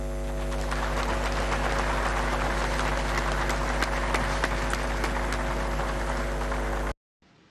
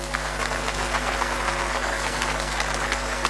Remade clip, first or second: second